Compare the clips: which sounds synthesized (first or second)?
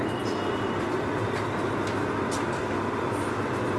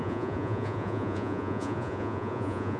second